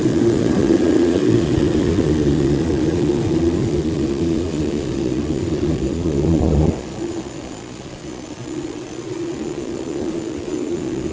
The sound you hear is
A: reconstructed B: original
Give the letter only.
A